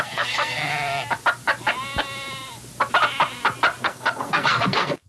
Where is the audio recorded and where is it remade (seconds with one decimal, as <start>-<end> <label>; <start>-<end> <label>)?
0.0-0.7 remade; 0.7-3.8 recorded; 3.8-5.1 remade